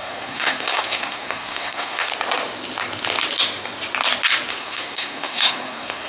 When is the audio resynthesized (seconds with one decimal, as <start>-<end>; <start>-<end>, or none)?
0.0-2.1; 4.5-6.1